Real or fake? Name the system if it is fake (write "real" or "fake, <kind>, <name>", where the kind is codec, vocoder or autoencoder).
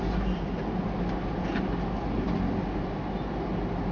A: real